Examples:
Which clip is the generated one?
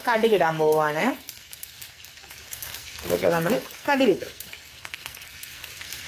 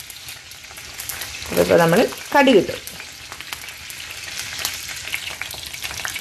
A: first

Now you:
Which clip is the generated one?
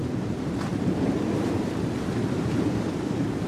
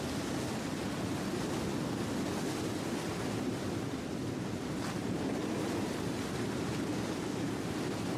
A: first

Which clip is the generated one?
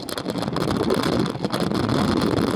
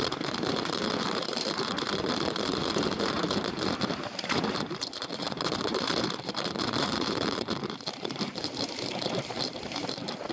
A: second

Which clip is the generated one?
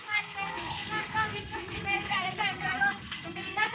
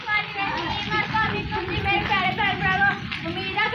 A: first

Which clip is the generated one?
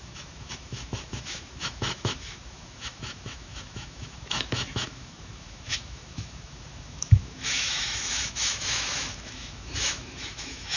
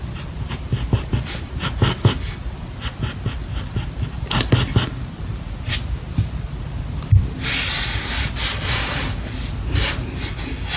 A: first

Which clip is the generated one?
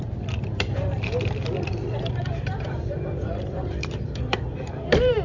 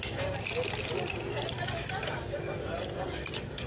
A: first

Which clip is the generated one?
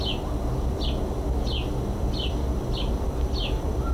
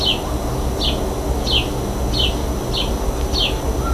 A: first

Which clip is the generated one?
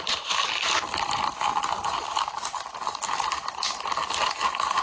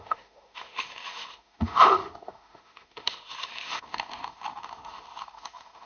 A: second